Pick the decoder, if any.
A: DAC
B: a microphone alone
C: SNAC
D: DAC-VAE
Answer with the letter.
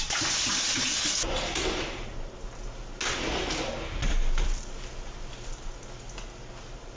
B